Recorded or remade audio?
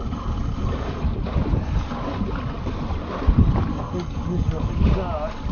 recorded